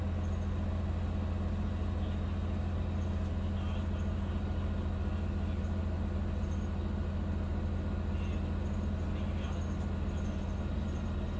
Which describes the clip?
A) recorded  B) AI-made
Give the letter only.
A